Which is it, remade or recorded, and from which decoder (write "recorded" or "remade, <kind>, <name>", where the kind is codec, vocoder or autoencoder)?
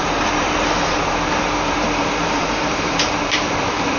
remade, vocoder, BigVGAN v2